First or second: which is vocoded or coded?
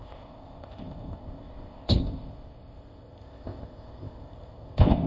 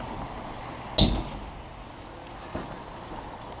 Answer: first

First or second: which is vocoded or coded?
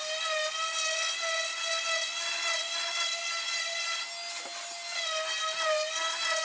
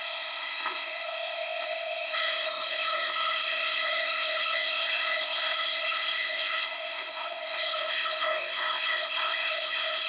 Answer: second